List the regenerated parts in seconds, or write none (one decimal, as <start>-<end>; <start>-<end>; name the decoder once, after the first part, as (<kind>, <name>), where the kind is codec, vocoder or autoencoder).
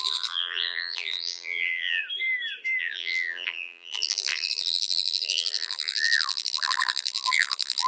0.0-2.0 (vocoder, BigVGAN v2); 2.8-7.9